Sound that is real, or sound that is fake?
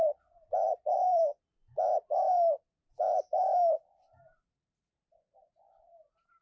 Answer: fake